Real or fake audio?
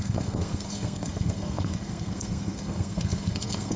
fake